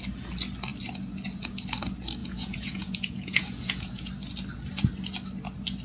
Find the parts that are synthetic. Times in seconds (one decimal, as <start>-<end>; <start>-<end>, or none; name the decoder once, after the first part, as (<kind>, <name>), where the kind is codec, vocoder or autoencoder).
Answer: 2.2-4.1 (vocoder, Vocos)